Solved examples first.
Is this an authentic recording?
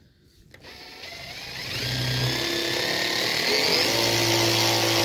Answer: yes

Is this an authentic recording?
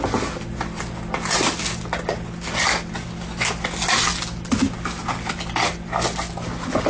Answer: yes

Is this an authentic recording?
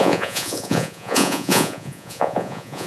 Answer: no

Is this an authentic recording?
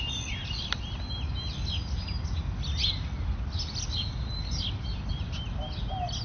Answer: yes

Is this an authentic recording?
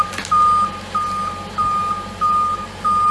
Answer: yes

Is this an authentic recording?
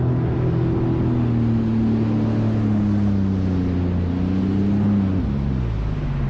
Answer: yes